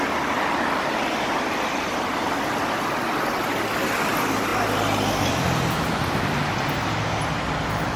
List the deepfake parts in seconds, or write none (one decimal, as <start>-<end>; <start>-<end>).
none